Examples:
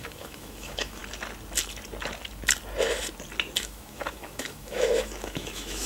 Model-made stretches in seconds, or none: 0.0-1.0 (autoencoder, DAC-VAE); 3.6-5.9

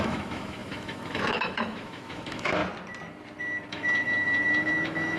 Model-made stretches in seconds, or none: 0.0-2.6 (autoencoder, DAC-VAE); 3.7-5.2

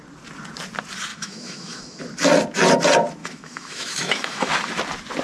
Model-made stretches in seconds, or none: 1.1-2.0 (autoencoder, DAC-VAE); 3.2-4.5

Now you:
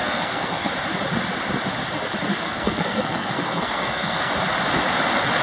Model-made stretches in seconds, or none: 0.0-0.7 (codec, SNAC); 2.3-4.3

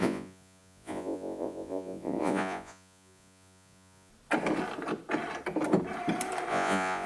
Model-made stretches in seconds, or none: 0.0-4.1 (vocoder, Vocos); 6.5-7.1

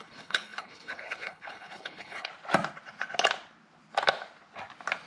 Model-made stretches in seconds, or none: 0.0-2.3 (codec, HILCodec)

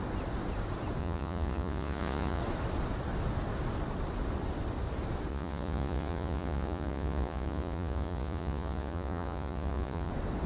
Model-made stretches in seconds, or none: 1.0-2.4 (vocoder, Vocos); 5.3-10.1